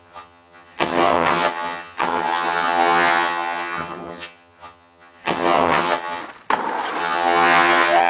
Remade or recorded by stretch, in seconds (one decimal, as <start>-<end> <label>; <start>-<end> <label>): 0.0-6.2 remade; 6.2-7.0 recorded; 7.0-8.1 remade